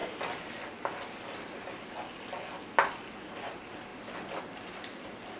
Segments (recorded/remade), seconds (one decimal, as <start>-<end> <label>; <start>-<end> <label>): 0.0-5.4 recorded